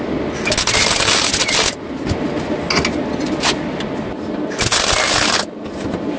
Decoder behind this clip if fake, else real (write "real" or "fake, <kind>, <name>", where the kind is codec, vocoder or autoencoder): real